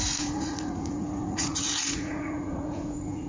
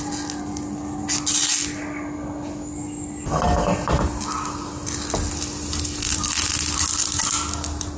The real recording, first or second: second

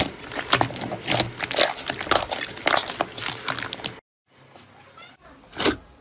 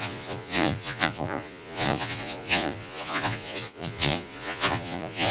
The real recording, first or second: first